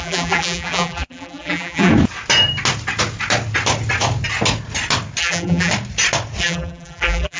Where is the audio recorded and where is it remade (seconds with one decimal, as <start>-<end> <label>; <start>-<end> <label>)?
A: 0.0-1.9 remade; 1.9-5.2 recorded; 5.2-5.7 remade; 5.7-6.4 recorded; 6.4-7.4 remade